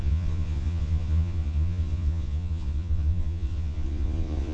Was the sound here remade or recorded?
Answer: remade